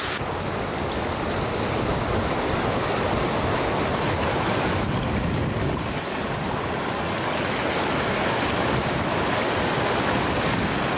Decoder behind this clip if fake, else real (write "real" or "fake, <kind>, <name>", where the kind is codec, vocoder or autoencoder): real